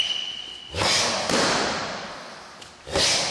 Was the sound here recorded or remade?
recorded